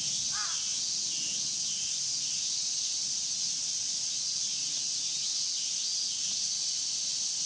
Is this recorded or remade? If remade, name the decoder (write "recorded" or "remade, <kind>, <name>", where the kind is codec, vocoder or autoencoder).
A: recorded